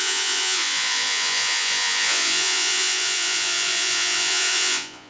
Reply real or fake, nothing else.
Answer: fake